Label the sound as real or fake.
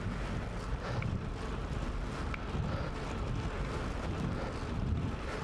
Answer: real